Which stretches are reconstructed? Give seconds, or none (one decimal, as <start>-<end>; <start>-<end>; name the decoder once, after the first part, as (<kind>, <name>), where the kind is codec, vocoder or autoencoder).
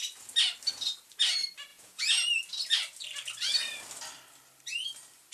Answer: 1.7-2.3 (vocoder, Vocos)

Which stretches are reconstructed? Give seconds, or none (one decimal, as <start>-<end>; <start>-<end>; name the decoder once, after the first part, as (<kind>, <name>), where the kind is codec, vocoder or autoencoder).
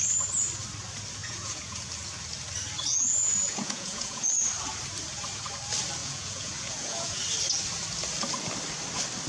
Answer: 1.2-1.9 (vocoder, Vocos); 2.9-4.3; 6.0-7.2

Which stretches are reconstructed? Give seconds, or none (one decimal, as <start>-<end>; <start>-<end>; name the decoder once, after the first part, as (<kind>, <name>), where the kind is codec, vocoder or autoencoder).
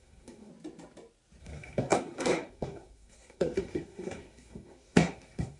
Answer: 0.0-0.5 (codec, SNAC); 1.4-5.6